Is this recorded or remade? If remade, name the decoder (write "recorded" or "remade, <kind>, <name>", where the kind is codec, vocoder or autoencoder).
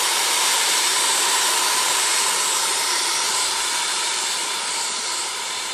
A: remade, vocoder, BigVGAN v2